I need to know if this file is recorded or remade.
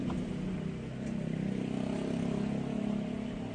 recorded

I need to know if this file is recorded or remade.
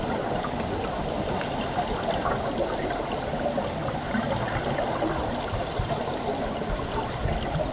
recorded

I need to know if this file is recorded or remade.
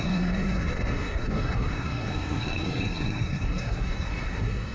remade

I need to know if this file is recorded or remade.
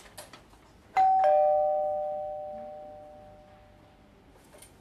recorded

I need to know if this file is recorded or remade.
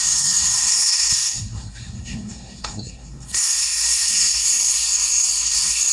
remade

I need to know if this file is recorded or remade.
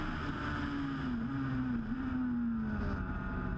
recorded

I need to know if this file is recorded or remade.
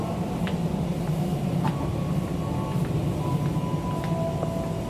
recorded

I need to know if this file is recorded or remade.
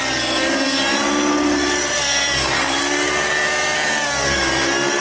recorded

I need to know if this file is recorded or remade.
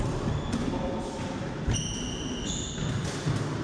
recorded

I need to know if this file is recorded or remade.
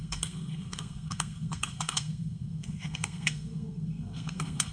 remade